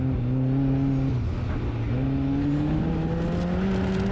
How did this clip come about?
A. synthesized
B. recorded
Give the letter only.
B